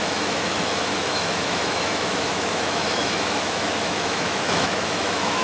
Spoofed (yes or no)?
yes